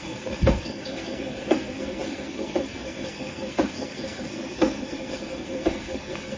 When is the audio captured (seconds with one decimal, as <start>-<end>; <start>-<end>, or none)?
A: none